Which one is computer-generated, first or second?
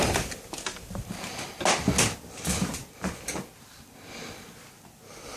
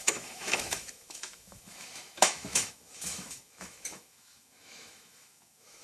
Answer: second